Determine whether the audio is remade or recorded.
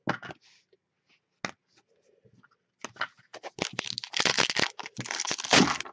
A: recorded